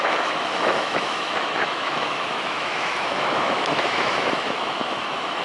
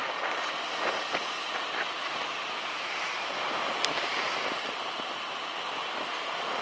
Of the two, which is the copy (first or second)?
first